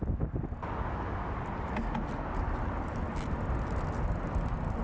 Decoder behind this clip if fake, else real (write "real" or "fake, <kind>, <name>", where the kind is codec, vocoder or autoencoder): real